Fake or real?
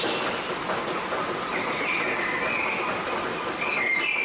real